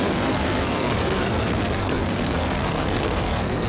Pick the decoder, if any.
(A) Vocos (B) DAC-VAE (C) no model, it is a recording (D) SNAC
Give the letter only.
D